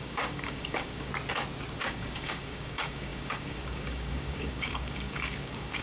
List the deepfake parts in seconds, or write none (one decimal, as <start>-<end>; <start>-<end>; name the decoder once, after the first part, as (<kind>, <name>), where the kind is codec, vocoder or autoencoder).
0.0-1.1 (codec, DAC); 1.8-5.8